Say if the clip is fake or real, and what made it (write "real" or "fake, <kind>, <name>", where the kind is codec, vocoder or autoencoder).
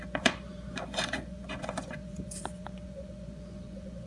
fake, vocoder, Vocos